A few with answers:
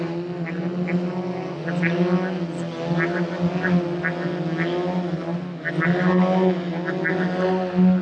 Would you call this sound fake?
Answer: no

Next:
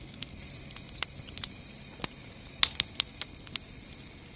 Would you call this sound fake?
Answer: no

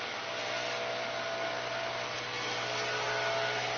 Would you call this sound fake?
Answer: no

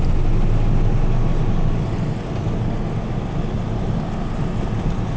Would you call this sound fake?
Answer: no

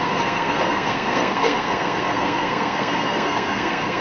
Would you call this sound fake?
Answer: yes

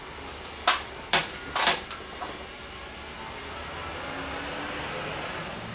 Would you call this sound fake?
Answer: no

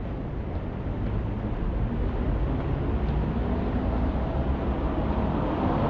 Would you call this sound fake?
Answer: no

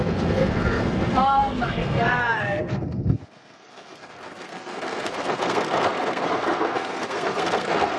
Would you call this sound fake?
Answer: yes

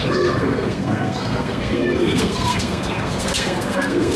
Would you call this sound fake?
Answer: yes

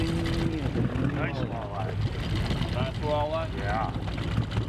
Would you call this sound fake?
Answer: no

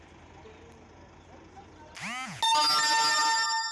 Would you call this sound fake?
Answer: no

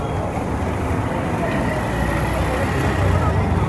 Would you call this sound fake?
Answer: no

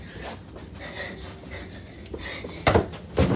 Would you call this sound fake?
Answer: no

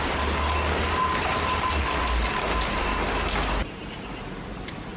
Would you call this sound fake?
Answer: no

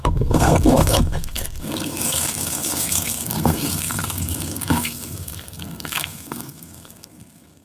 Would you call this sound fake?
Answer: yes